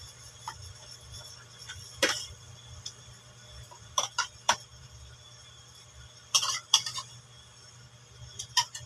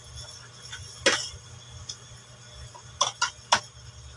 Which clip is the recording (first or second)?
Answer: second